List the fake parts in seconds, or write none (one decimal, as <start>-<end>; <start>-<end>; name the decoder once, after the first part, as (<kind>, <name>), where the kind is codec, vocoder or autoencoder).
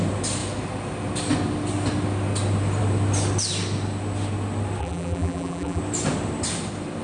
4.8-5.8 (vocoder, BigVGAN v2)